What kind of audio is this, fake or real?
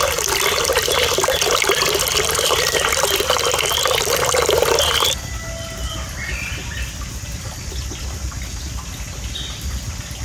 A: real